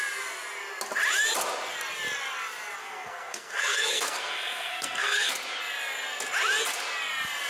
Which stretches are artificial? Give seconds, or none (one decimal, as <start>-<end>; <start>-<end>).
2.8-5.3